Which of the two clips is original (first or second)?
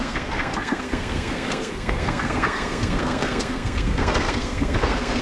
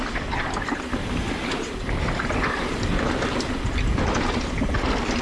second